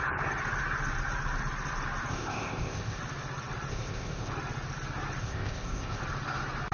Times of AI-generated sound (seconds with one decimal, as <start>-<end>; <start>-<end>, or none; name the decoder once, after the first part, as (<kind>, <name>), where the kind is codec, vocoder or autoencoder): 2.1-3.0 (codec, ZipCodec); 3.7-4.3; 5.2-6.0